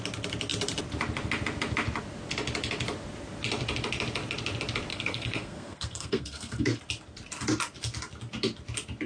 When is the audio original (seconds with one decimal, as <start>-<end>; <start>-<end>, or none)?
0.0-4.9; 6.8-9.1